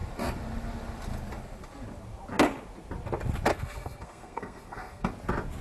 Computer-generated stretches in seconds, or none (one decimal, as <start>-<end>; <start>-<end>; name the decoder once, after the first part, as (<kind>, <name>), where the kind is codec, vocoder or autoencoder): 3.5-5.1 (codec, SNAC)